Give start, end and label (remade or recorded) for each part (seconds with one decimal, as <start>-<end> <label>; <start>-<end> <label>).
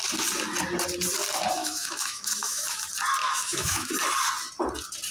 0.0-1.6 recorded; 1.6-2.8 remade; 2.8-3.2 recorded; 3.2-3.9 remade; 3.9-5.1 recorded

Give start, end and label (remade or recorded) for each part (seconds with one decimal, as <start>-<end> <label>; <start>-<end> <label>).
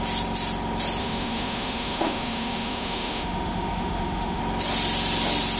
0.0-1.0 recorded; 1.0-4.4 remade; 4.4-5.6 recorded